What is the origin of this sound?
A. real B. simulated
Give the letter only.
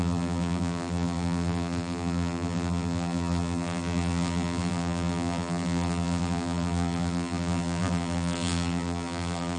B